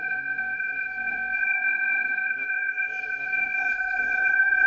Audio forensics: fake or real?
fake